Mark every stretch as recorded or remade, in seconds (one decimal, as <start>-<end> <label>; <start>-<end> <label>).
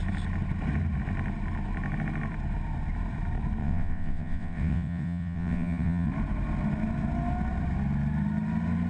0.0-3.6 recorded; 3.6-6.1 remade; 6.1-8.9 recorded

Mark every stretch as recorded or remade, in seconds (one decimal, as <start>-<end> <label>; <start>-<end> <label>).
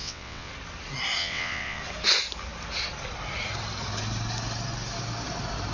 0.0-0.5 remade; 0.5-1.2 recorded; 1.2-1.8 remade; 1.8-5.7 recorded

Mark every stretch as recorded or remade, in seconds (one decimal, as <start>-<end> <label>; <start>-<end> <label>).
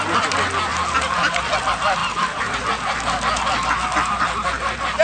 0.0-5.0 recorded